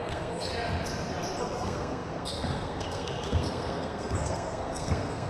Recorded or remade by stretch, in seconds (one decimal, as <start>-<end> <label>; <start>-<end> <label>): 0.0-0.5 remade; 0.5-1.4 recorded; 1.4-5.3 remade